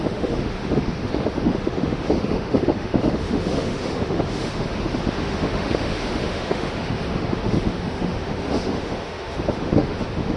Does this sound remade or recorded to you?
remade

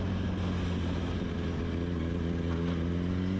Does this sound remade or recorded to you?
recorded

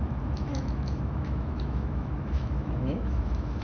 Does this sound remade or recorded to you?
remade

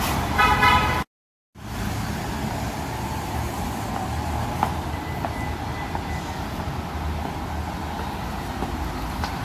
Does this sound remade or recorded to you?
recorded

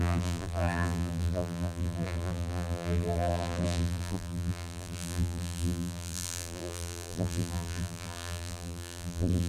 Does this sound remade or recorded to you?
remade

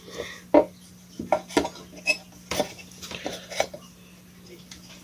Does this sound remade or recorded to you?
recorded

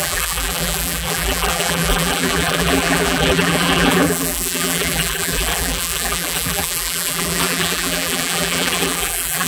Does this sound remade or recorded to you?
remade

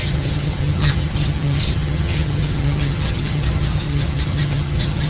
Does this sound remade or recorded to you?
remade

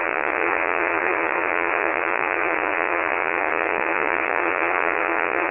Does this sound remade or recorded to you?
remade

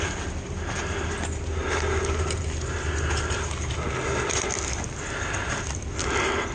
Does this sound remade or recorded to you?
recorded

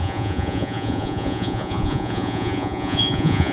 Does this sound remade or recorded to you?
remade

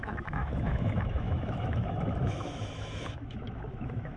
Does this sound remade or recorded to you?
remade